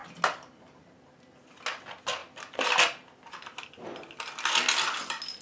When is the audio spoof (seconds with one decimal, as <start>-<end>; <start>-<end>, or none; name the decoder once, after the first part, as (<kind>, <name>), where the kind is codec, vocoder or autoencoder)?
none